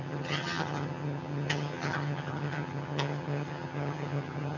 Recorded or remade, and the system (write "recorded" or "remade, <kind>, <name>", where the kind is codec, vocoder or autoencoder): remade, vocoder, HiFi-GAN